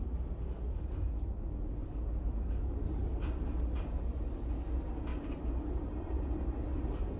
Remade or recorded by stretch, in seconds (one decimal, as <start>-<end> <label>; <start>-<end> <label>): 0.0-1.8 recorded; 1.8-2.5 remade; 2.5-3.0 recorded; 3.0-4.0 remade; 4.0-5.1 recorded; 5.1-6.8 remade; 6.8-7.2 recorded